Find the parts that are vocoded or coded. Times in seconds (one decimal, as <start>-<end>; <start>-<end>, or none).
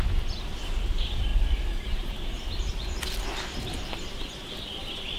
none